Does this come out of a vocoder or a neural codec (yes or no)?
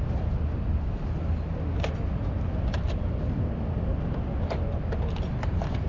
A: no